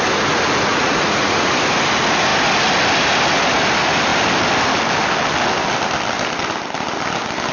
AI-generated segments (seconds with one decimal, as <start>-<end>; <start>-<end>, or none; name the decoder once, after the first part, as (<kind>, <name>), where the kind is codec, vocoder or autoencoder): 0.7-1.5 (vocoder, Vocos)